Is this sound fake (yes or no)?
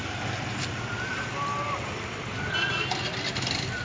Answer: yes